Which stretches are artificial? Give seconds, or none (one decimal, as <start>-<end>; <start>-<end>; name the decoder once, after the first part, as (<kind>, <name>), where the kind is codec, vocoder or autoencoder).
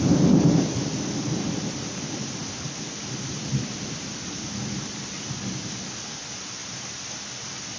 6.6-7.2 (vocoder, BigVGAN v2)